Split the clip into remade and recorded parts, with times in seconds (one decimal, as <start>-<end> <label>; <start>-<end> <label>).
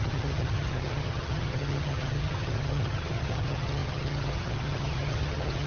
0.0-5.7 remade